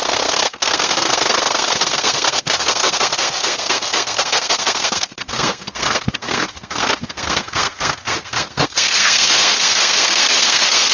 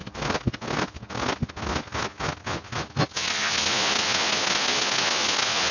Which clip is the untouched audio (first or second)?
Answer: second